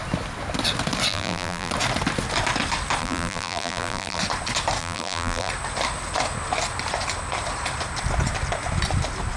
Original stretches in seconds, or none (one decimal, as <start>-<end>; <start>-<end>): 0.0-1.1; 1.7-3.0; 4.2-4.8; 5.5-9.4